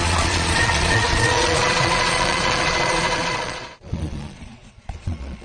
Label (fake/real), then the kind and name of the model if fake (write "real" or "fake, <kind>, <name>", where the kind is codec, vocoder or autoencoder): fake, vocoder, Vocos